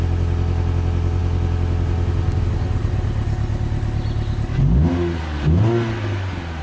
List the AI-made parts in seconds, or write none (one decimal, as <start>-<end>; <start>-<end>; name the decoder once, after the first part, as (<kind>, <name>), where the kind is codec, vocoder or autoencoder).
none